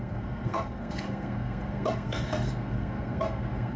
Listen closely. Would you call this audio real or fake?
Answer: fake